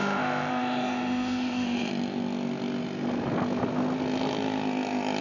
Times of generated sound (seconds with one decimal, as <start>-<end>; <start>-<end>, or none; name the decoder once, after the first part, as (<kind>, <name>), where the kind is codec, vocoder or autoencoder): 0.0-1.9 (autoencoder, DAC-VAE)